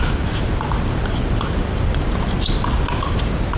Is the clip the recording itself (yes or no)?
yes